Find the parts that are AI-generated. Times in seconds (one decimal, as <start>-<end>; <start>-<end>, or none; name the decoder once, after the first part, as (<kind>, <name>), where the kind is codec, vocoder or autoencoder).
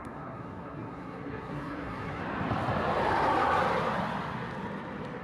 0.0-2.2 (codec, SNAC)